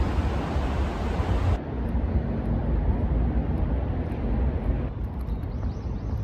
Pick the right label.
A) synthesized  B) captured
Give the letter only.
B